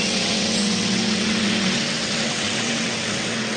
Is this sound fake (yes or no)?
yes